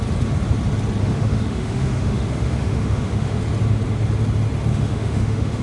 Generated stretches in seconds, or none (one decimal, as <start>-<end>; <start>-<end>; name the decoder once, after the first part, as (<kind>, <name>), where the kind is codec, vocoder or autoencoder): 1.0-3.4 (autoencoder, DAC-VAE); 4.7-5.6